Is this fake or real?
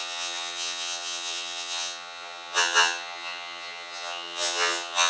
fake